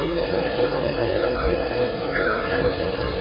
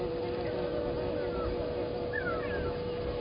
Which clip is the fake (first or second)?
first